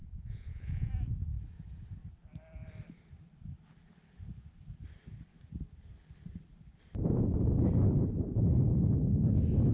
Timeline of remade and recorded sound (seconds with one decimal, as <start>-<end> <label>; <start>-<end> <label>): 0.0-0.9 remade; 0.9-9.7 recorded